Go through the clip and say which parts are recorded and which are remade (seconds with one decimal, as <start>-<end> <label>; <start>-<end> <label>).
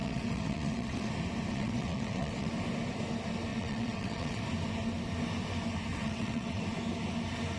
0.0-1.1 remade; 1.1-1.5 recorded; 1.5-2.5 remade; 2.5-3.5 recorded; 3.5-4.4 remade; 4.4-5.9 recorded; 5.9-6.6 remade; 6.6-7.6 recorded